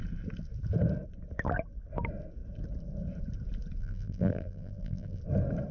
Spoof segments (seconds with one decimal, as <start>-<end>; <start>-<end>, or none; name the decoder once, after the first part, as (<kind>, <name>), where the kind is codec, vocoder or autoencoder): 3.8-5.2 (vocoder, BigVGAN v2)